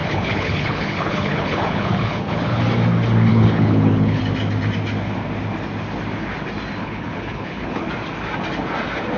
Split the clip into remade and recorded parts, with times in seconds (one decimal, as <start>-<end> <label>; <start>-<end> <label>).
0.0-2.6 remade; 2.6-3.3 recorded; 3.3-4.2 remade; 4.2-6.8 recorded; 6.8-7.9 remade; 7.9-9.2 recorded